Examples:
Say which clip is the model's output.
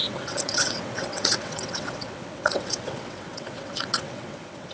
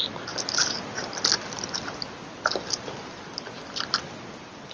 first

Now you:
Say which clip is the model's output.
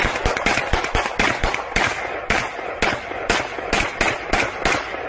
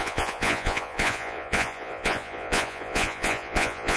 second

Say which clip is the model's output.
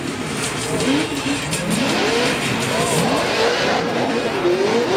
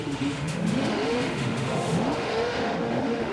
second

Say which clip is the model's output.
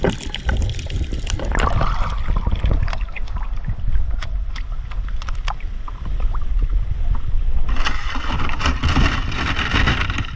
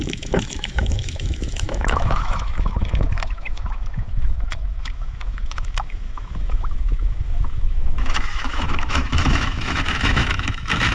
second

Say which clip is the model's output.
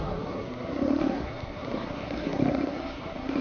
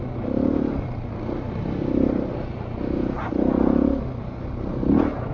first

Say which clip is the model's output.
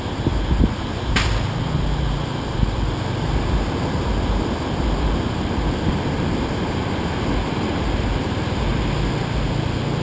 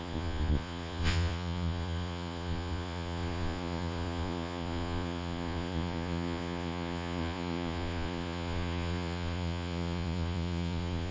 second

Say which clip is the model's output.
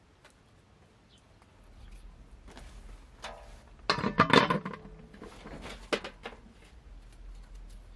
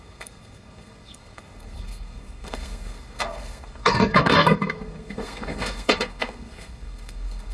second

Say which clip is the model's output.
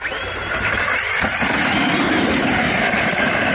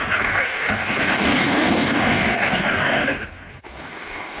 second